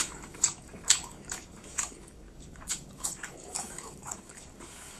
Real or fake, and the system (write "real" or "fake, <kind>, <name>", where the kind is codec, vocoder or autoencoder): fake, codec, DAC